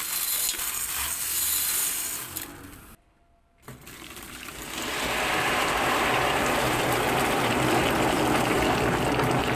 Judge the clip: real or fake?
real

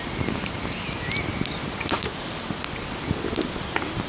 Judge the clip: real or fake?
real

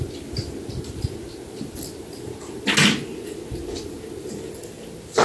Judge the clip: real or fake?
real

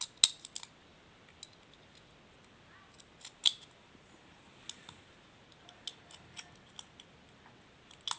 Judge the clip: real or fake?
real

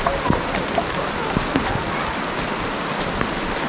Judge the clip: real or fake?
real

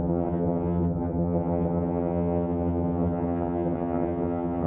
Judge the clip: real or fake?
fake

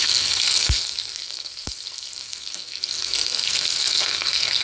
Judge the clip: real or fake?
fake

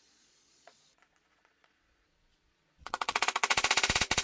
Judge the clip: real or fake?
fake